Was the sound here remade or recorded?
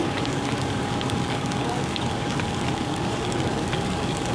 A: remade